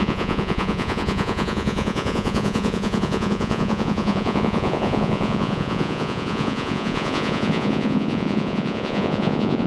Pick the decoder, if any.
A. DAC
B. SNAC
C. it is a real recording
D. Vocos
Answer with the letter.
D